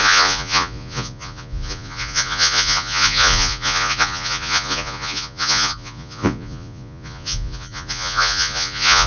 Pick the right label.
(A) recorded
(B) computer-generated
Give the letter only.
B